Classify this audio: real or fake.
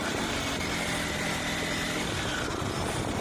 real